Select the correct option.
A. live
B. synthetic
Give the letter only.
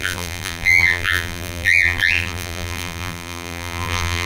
B